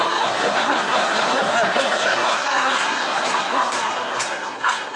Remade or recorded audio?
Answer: remade